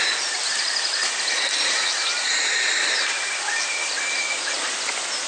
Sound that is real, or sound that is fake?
real